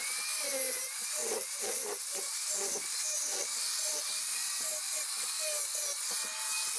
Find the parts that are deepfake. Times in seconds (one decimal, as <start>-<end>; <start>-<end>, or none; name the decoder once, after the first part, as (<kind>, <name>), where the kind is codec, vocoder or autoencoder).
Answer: none